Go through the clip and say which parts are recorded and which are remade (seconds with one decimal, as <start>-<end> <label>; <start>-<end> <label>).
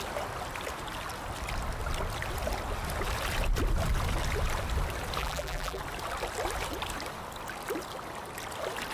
0.0-5.2 recorded; 5.2-5.8 remade; 5.8-8.9 recorded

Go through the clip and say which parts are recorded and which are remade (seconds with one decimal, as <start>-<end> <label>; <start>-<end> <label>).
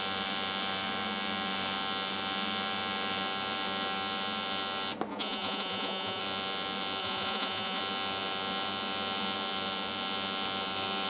0.0-5.1 recorded; 5.1-6.2 remade; 6.2-7.0 recorded; 7.0-7.8 remade; 7.8-11.1 recorded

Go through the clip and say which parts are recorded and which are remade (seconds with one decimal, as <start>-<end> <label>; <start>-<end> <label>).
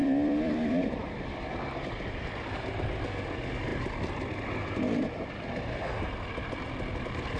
0.0-1.6 remade; 1.6-7.4 recorded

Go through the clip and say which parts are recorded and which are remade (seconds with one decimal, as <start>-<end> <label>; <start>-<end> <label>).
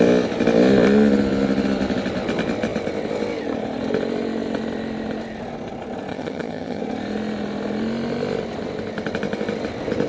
0.0-6.1 recorded; 6.1-6.8 remade; 6.8-10.1 recorded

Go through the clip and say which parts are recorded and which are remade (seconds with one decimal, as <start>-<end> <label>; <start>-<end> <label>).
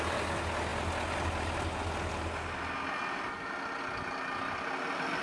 0.0-5.2 recorded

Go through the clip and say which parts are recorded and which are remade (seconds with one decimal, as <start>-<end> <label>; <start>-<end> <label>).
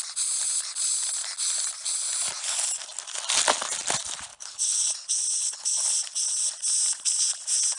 0.0-4.3 recorded; 4.3-4.9 remade; 4.9-5.4 recorded; 5.4-6.0 remade; 6.0-7.8 recorded